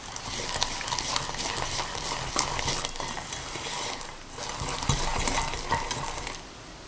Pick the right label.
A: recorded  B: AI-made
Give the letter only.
A